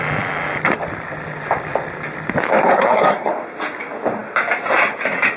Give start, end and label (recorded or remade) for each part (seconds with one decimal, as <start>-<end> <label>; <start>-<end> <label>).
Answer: 0.0-2.6 recorded; 2.6-3.3 remade; 3.3-5.4 recorded